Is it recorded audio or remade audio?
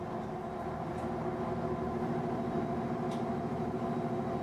recorded